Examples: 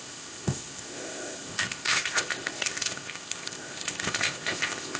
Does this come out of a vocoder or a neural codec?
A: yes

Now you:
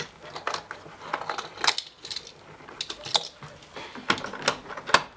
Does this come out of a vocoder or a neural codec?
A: no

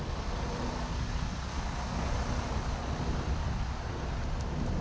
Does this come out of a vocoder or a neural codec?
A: no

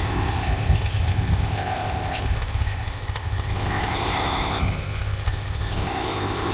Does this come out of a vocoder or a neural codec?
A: yes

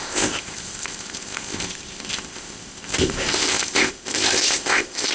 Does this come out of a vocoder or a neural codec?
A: yes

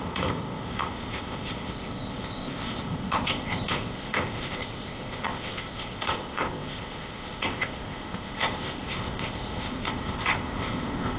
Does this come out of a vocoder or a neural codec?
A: yes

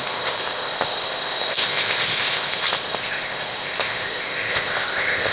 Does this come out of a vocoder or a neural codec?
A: yes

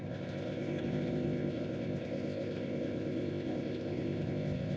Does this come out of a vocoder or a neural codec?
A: yes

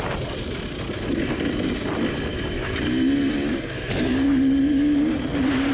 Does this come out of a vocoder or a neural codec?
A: no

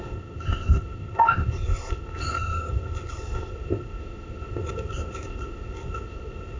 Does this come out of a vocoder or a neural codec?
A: yes